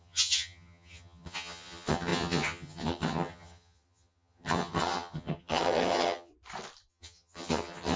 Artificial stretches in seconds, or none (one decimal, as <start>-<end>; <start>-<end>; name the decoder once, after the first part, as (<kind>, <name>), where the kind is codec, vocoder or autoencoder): 0.0-6.3 (vocoder, HiFi-GAN); 6.9-8.0